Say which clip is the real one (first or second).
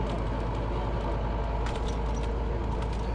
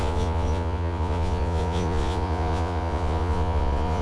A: first